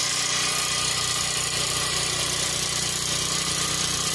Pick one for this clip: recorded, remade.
recorded